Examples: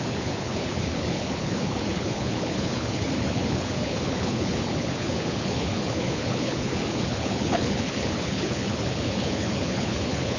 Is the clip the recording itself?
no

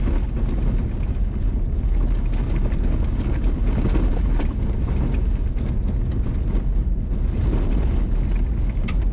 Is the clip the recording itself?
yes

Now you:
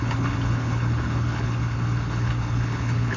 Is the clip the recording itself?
no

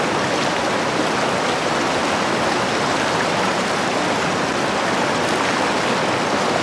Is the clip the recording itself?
yes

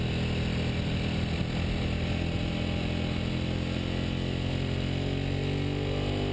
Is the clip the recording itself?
yes